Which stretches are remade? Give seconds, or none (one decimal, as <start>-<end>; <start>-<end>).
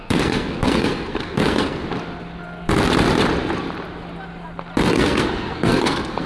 0.0-1.8; 4.9-6.3